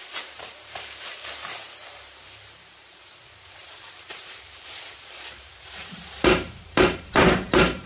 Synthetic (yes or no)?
yes